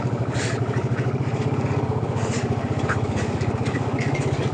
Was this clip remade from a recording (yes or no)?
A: yes